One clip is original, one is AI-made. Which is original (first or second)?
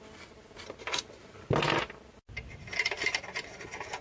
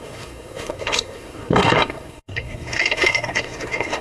first